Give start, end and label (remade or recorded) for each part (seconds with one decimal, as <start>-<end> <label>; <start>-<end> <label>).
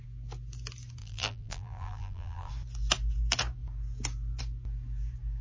0.0-1.0 recorded; 1.0-2.5 remade; 2.5-5.4 recorded